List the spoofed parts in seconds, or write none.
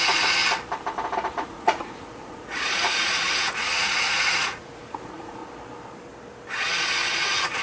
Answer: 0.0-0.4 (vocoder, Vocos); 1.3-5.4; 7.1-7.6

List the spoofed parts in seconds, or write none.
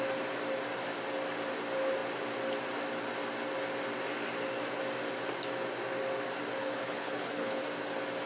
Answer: 6.6-7.6 (codec, HILCodec)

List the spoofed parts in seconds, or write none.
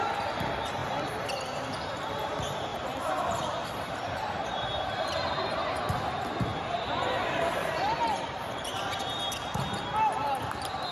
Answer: 0.8-1.3 (vocoder, BigVGAN v2); 2.7-5.8; 6.5-9.3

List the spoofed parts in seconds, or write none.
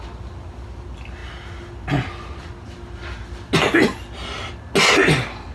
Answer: none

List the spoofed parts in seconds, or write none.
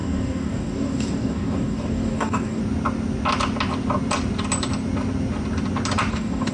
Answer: 0.0-2.6 (codec, DAC); 6.1-6.5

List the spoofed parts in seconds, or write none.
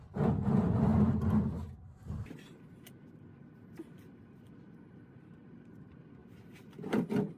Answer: 0.0-7.4 (vocoder, BigVGAN v2)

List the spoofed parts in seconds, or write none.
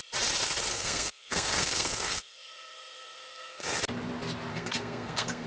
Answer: 0.7-3.8 (codec, SNAC); 4.5-5.5